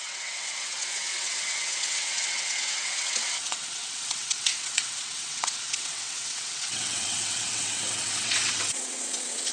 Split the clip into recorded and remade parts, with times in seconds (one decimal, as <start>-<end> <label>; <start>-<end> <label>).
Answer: 0.0-9.5 remade